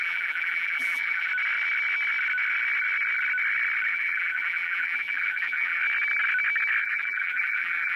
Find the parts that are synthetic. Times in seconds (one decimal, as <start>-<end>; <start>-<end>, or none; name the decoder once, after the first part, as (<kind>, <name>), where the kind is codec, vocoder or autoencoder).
0.0-1.3 (vocoder, BigVGAN v2); 3.9-5.8; 6.8-8.0